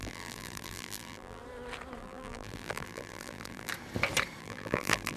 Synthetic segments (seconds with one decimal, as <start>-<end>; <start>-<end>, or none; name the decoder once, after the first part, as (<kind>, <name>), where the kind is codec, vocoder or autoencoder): 0.0-1.4 (vocoder, BigVGAN v2); 2.0-3.7; 4.4-5.2